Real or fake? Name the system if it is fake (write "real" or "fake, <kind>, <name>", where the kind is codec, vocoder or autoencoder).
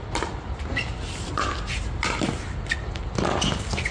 real